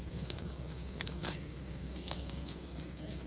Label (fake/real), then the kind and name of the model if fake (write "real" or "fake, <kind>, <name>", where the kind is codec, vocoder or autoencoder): fake, codec, SNAC